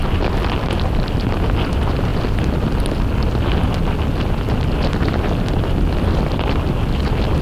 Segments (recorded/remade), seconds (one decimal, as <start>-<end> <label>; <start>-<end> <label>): 0.0-7.4 recorded